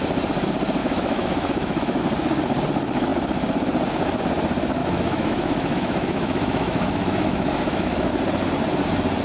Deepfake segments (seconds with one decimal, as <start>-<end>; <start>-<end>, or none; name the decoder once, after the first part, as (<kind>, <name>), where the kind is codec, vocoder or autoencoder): 0.8-2.0 (autoencoder, DAC-VAE); 4.8-8.1